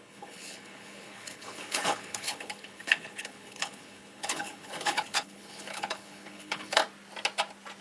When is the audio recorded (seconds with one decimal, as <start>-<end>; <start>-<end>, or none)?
6.8-7.8